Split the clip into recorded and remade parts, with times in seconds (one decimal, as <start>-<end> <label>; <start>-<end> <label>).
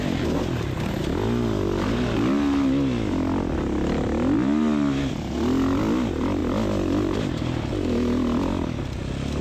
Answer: 0.0-9.4 recorded